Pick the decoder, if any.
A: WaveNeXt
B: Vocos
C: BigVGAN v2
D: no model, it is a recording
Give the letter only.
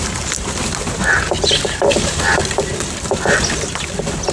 D